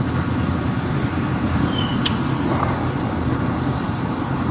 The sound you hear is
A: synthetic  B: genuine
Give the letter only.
A